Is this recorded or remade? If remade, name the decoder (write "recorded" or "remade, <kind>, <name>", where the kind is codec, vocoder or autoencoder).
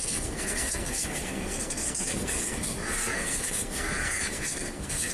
remade, codec, SNAC